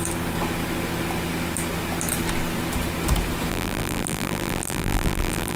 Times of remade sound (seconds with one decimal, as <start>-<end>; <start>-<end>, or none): 3.5-5.6